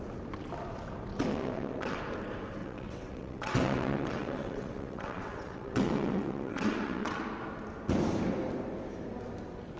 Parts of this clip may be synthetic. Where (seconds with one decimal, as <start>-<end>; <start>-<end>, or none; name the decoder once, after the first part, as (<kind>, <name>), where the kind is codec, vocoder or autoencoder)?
1.3-2.0 (vocoder, WaveNeXt); 2.6-7.2